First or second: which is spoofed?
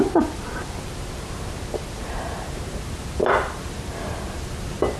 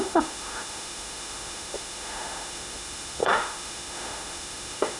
second